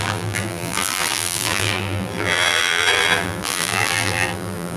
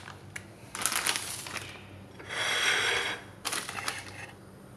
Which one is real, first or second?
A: second